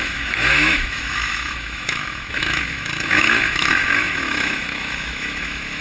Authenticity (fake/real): fake